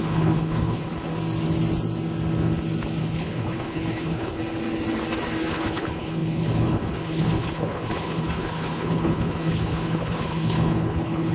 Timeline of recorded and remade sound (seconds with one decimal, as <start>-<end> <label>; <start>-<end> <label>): 0.0-0.9 remade; 0.9-3.0 recorded; 3.0-4.4 remade; 4.4-5.5 recorded; 5.5-11.3 remade